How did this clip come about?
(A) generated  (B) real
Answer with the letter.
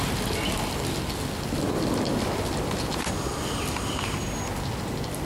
B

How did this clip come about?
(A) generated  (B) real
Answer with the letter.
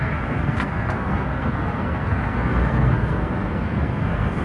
A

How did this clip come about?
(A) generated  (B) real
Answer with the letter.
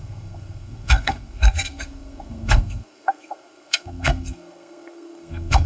A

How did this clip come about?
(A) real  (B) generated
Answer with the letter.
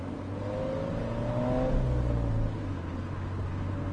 A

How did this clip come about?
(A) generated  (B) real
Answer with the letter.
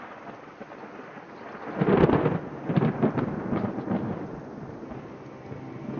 B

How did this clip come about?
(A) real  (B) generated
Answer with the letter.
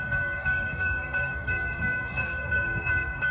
B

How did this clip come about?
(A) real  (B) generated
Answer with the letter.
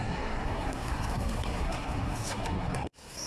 B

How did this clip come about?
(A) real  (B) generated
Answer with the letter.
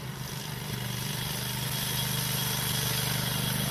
A